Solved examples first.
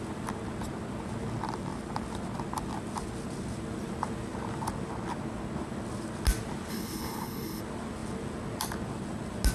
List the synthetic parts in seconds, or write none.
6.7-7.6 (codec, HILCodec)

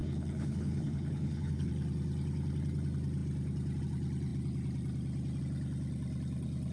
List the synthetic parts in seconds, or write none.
0.0-1.7 (codec, HILCodec)

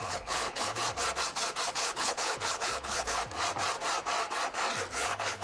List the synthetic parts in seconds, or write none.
0.0-0.8 (codec, HILCodec); 1.7-3.2; 4.9-5.4

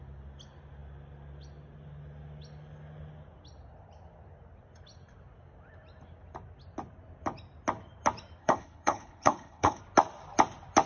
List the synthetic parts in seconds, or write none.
8.4-9.8 (codec, HILCodec)

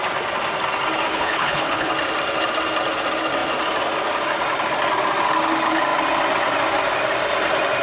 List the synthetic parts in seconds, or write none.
1.1-1.9 (codec, HILCodec)